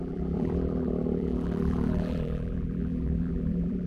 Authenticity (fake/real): fake